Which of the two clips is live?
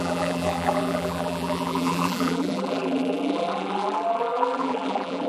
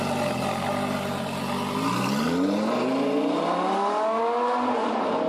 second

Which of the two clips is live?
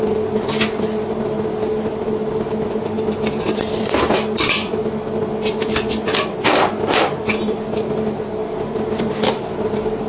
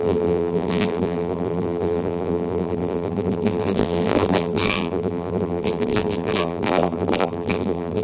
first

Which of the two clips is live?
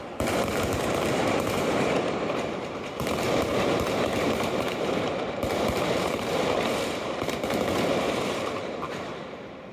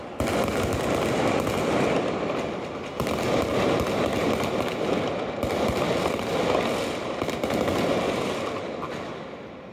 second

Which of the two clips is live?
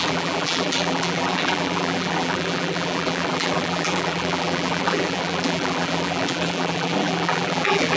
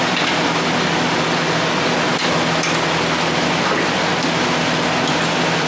second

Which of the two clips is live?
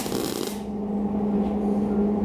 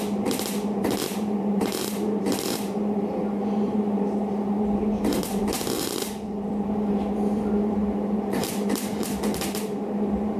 first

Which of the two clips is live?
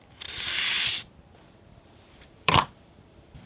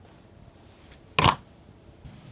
second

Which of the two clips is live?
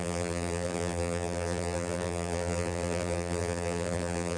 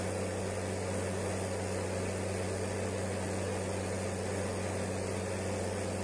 second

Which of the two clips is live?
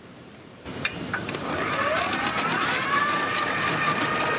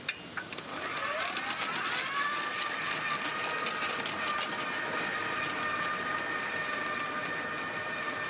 second